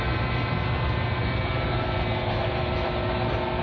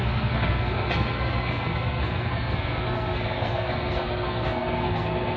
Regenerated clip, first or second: second